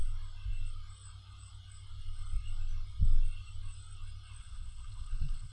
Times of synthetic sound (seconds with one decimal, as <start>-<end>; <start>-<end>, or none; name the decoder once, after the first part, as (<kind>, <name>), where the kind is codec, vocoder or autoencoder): 4.4-5.5 (codec, SNAC)